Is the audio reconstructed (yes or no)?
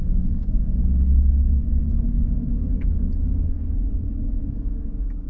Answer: yes